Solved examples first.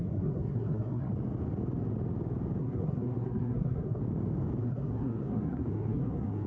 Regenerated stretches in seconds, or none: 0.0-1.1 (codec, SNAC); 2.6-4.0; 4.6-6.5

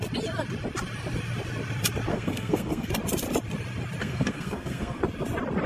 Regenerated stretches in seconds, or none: 2.1-2.9 (codec, SNAC); 4.0-5.0

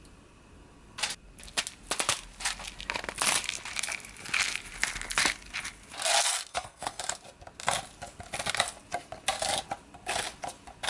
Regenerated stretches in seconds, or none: 6.5-7.0 (codec, SNAC)

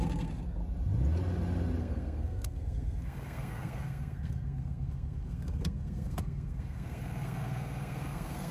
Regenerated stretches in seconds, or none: 0.0-0.6 (codec, SNAC); 1.8-8.5

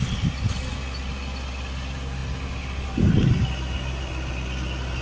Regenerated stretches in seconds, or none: none

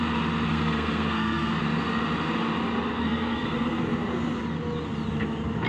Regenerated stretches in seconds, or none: 0.5-1.6 (codec, SNAC); 3.0-3.8